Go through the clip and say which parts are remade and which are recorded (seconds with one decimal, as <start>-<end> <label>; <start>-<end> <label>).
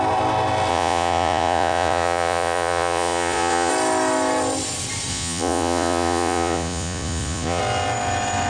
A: 0.0-0.7 recorded; 0.7-3.7 remade; 3.7-5.1 recorded; 5.1-7.6 remade; 7.6-8.5 recorded